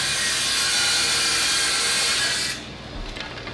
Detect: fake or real real